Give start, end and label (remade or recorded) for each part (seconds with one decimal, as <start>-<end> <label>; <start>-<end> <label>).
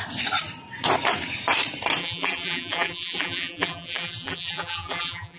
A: 0.0-2.0 recorded; 2.0-5.4 remade